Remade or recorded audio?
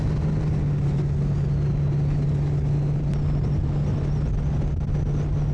recorded